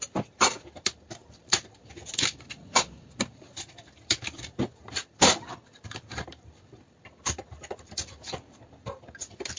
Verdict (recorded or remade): remade